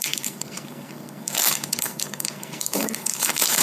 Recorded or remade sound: remade